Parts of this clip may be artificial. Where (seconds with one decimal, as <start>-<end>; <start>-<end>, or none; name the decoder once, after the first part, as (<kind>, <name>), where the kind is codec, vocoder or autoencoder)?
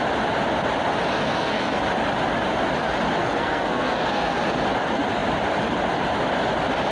1.2-1.8 (codec, SNAC); 3.2-4.4